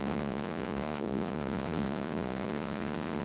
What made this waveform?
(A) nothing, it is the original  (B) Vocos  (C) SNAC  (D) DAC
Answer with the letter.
B